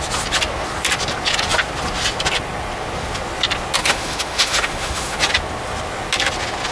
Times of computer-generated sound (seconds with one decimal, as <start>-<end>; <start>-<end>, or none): 3.8-5.2